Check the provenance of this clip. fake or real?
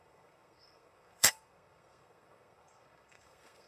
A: fake